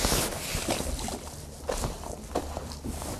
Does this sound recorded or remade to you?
recorded